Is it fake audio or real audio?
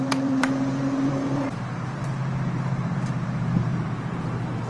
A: fake